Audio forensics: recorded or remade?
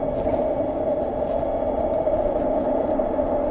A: recorded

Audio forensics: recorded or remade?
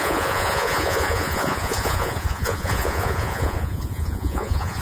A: remade